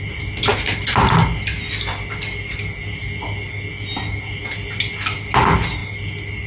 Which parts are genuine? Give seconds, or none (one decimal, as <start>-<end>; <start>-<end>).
0.0-6.5